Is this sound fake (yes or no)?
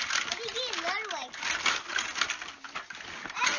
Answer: no